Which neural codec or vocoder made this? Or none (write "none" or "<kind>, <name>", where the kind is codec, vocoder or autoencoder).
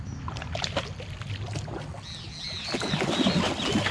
none